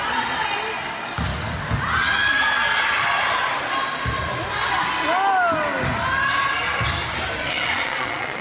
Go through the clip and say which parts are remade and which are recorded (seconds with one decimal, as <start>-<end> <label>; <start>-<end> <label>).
0.0-7.4 recorded; 7.4-8.4 remade

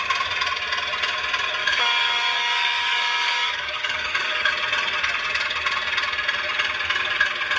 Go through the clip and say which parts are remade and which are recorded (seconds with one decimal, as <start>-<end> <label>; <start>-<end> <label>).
0.0-1.6 recorded; 1.6-4.5 remade; 4.5-7.6 recorded